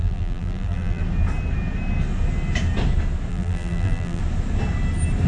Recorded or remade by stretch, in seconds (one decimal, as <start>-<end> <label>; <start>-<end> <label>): 0.0-1.0 remade; 1.0-3.3 recorded; 3.3-4.2 remade; 4.2-5.3 recorded